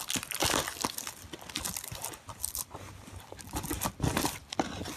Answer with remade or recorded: recorded